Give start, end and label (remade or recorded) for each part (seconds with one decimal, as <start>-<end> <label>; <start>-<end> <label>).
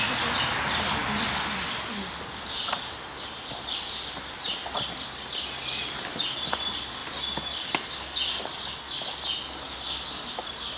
0.0-10.8 recorded